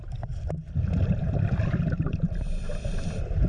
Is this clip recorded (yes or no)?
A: yes